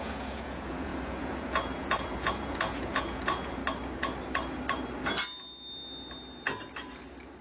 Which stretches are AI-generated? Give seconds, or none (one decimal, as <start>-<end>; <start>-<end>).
0.0-3.6